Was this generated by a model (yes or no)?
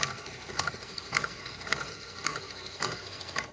yes